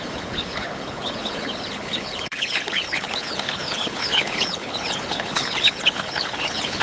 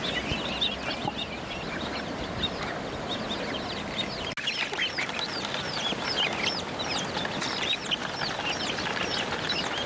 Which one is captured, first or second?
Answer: second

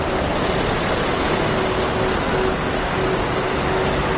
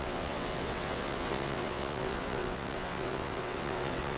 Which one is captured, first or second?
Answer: first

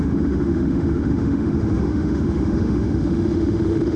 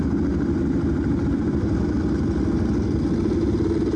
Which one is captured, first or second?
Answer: second